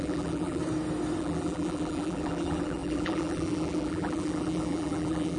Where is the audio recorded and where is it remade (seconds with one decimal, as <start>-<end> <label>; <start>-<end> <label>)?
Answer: 0.0-0.6 remade; 0.6-1.2 recorded; 1.2-5.4 remade